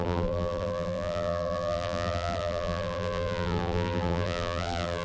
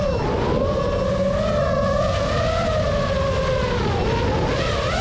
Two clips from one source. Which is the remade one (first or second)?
first